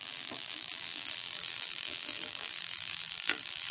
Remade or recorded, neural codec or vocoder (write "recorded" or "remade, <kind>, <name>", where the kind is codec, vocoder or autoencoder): remade, vocoder, BigVGAN v2